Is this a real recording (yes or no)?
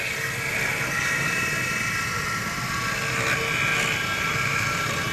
yes